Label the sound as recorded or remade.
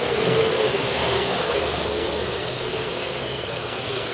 remade